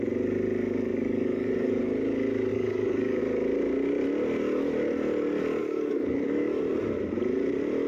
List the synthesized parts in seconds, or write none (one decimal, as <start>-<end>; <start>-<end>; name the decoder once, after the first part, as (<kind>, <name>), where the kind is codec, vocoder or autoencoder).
0.9-1.8 (codec, DAC); 2.5-3.2; 5.6-6.6